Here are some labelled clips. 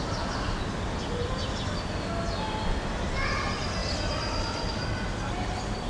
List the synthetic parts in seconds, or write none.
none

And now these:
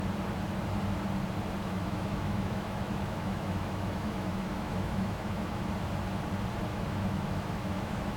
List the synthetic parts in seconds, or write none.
1.6-5.7 (autoencoder, DAC-VAE); 6.7-8.2

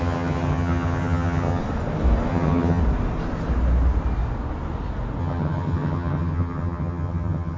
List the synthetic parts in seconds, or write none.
0.0-1.6 (vocoder, HiFi-GAN); 2.3-2.8; 5.2-7.6

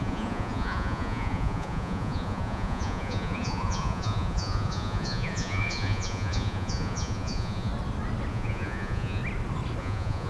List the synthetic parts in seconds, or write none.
0.0-7.7 (vocoder, Vocos); 8.3-9.2; 9.8-10.3

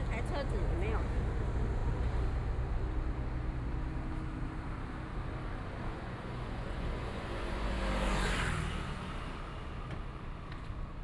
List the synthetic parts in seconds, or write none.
5.9-7.8 (vocoder, Vocos)